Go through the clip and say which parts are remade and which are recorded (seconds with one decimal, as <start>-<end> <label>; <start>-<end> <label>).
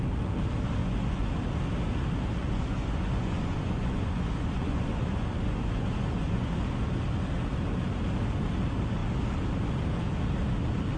0.0-0.8 recorded; 0.8-1.3 remade; 1.3-2.4 recorded; 2.4-6.5 remade; 6.5-11.0 recorded